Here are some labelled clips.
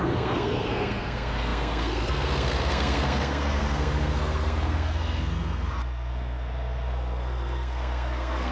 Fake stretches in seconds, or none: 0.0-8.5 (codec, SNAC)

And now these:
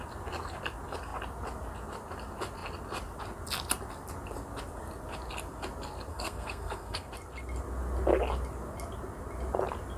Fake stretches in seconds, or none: 6.1-7.1 (codec, SNAC)

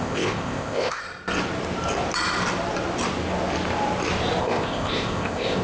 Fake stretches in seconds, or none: 0.0-1.0 (codec, ZipCodec); 4.4-5.6